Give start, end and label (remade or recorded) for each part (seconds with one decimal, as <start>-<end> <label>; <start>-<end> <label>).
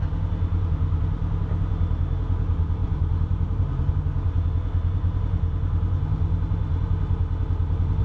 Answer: 0.0-2.8 recorded; 2.8-3.9 remade; 3.9-8.0 recorded